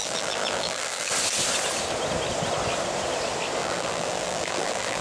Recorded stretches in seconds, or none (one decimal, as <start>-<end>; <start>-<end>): 1.1-3.6